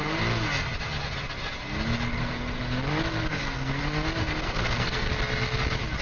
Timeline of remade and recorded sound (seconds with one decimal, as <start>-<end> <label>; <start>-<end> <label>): 0.0-2.1 recorded; 2.1-2.6 remade; 2.6-3.3 recorded; 3.3-3.8 remade; 3.8-4.2 recorded; 4.2-5.1 remade; 5.1-6.0 recorded

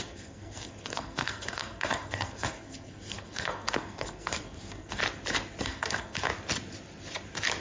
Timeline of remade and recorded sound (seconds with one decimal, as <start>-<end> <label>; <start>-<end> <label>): 0.0-5.0 remade; 5.0-5.6 recorded; 5.6-6.3 remade; 6.3-7.6 recorded

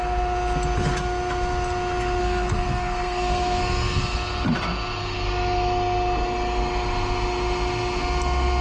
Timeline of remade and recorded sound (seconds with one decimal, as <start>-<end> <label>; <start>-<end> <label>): 0.0-2.2 recorded; 2.2-3.6 remade; 3.6-8.6 recorded